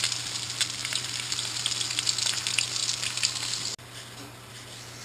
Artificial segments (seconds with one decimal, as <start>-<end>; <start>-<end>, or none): 0.8-1.6